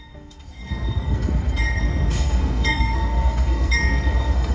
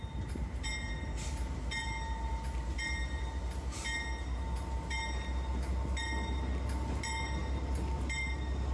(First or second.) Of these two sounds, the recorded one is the second